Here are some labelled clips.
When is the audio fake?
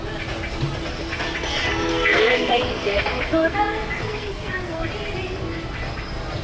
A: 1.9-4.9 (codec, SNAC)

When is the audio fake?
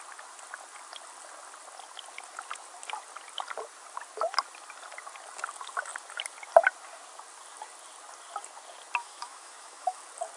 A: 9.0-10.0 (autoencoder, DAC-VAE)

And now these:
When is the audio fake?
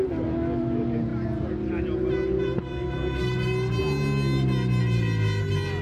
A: none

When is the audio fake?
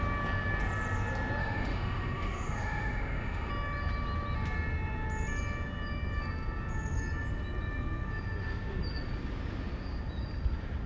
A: 1.4-3.5 (autoencoder, DAC-VAE)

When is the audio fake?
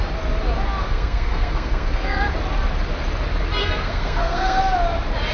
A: 0.8-2.3 (codec, SNAC); 3.6-4.6